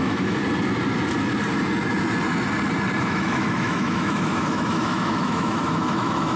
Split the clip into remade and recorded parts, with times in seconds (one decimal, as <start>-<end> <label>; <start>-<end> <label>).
0.0-0.4 remade; 0.4-3.0 recorded; 3.0-6.4 remade